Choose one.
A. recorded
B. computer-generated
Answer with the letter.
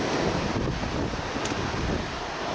A